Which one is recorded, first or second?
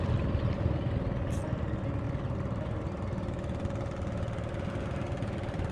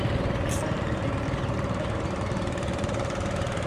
first